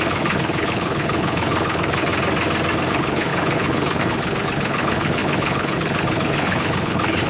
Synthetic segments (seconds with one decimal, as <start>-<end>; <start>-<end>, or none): 0.0-2.1; 2.9-7.3